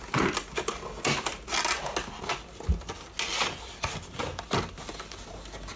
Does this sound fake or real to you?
real